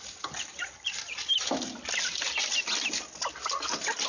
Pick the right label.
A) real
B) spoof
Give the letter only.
A